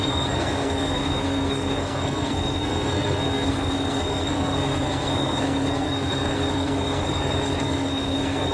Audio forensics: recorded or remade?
remade